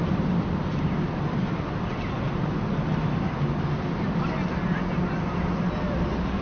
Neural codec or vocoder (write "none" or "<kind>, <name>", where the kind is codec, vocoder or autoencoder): none